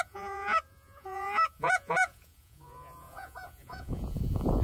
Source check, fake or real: fake